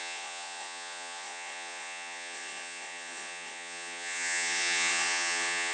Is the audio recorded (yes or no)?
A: no